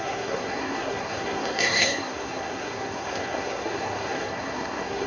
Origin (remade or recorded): remade